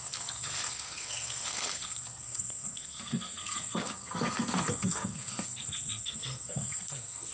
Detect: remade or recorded remade